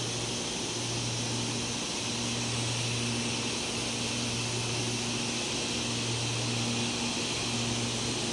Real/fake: real